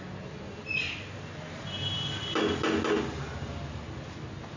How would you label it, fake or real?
real